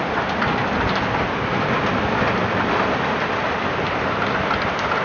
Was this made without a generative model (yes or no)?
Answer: yes